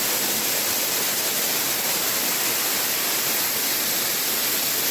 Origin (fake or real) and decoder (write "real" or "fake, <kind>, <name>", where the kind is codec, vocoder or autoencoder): real